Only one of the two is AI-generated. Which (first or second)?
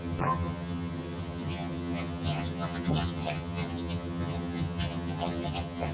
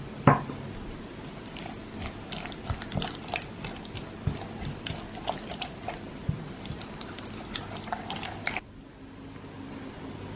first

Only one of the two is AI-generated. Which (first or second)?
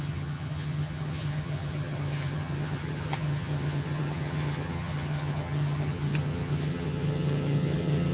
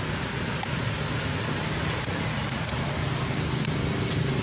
first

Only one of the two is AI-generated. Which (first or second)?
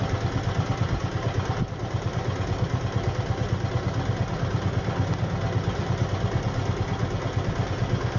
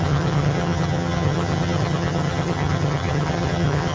second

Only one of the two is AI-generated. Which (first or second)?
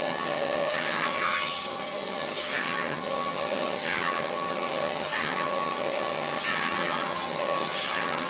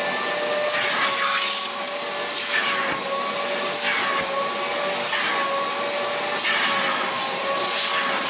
first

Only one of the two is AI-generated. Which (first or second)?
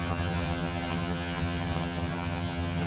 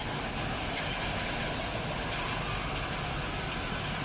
first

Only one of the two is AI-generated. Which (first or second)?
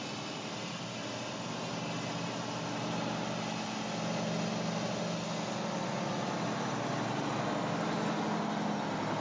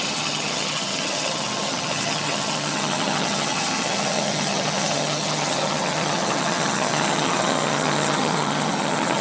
second